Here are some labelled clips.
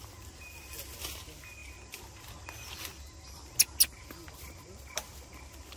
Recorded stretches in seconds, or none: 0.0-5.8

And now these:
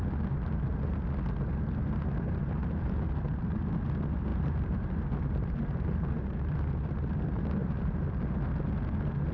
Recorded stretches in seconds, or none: 0.0-1.9; 2.6-4.3; 6.5-7.6; 8.2-9.3

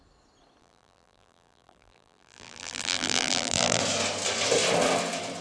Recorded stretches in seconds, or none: 0.0-0.6; 3.8-5.4

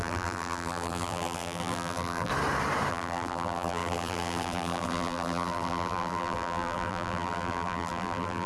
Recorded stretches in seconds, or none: 2.3-2.9

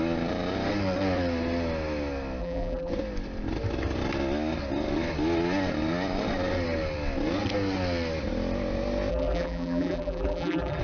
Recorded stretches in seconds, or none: 0.0-2.4; 2.9-9.1

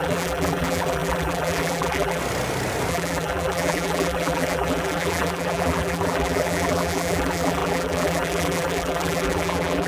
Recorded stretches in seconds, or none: 2.2-2.9

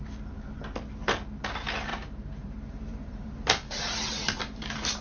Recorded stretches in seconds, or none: 0.0-1.9

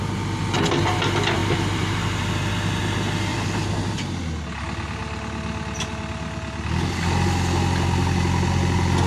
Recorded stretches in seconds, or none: 0.0-1.4; 2.5-3.3; 3.9-9.1